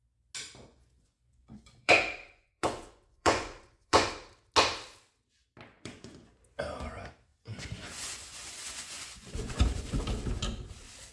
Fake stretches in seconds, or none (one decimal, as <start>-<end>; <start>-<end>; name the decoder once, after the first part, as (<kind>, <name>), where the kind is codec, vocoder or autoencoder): 0.7-4.1 (vocoder, Vocos); 5.7-6.3; 7.3-10.0